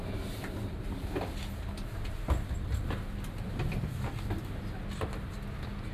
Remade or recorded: recorded